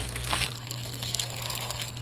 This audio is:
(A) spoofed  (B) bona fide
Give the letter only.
A